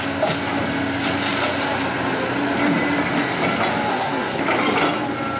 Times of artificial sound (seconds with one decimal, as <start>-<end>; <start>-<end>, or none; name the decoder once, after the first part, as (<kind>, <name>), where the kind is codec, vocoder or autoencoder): 3.9-4.4 (codec, SNAC)